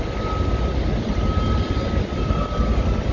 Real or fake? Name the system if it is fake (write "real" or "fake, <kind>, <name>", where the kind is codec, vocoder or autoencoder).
real